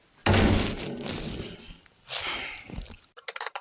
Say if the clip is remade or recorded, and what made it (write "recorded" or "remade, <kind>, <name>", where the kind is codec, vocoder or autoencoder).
recorded